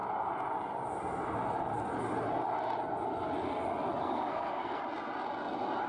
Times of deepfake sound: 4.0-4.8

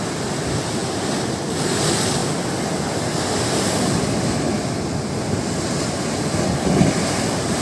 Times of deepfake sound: none